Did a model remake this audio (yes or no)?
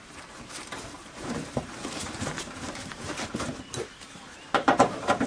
yes